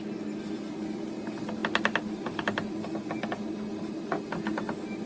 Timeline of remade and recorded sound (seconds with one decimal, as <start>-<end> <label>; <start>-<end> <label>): 0.0-5.1 recorded